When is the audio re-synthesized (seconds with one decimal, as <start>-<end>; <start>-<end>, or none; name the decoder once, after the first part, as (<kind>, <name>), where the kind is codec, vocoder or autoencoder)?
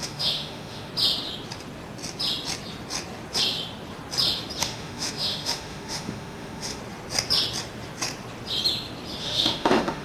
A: 0.0-0.9 (autoencoder, DAC-VAE); 4.6-6.8; 9.2-10.0